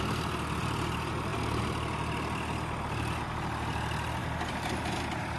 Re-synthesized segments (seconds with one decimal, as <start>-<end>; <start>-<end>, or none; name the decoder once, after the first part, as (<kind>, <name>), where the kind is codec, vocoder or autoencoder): none